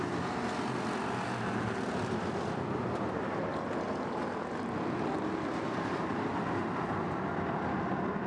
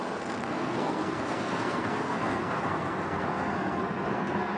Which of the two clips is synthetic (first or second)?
second